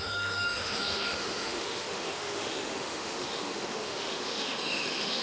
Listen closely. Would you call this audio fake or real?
fake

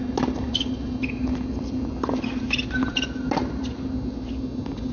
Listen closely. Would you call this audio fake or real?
real